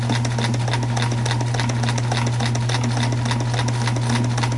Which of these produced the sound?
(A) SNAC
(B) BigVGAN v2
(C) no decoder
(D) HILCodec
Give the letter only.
C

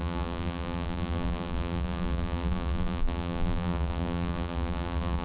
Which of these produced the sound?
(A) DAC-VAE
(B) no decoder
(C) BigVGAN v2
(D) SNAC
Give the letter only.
C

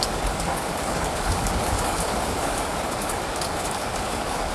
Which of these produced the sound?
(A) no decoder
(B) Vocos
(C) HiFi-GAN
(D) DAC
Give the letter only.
D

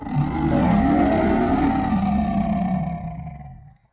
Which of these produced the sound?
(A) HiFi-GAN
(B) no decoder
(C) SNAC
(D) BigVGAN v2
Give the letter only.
B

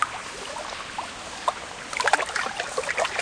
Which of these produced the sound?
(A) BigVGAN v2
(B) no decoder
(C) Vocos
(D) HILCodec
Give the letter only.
B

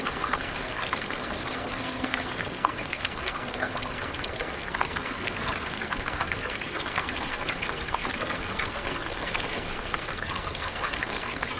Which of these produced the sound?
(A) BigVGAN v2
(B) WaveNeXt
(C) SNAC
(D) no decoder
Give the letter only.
C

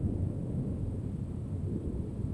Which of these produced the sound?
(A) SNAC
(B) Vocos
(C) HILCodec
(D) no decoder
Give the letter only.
D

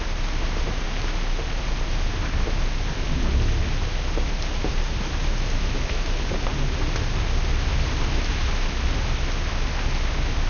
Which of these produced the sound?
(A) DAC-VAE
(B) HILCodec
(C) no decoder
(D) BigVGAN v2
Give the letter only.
C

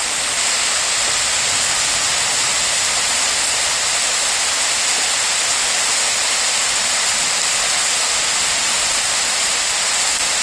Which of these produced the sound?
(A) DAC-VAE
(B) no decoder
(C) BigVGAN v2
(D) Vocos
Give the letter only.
B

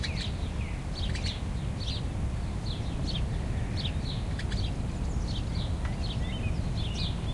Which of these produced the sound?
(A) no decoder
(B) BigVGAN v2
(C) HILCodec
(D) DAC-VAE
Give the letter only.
A